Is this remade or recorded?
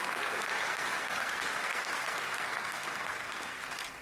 remade